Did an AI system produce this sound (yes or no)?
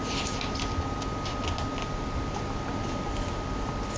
no